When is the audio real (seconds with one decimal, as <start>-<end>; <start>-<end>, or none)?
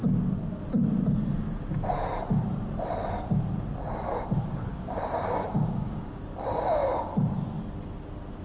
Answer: 0.0-4.7; 6.2-8.4